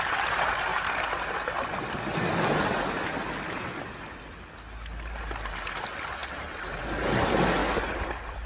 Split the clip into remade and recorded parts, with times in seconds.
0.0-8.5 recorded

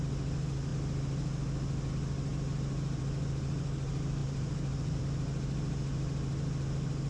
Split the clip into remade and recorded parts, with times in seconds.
0.0-4.2 recorded; 4.2-5.0 remade; 5.0-7.1 recorded

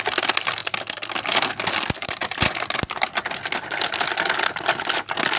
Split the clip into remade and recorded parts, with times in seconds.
0.0-5.4 recorded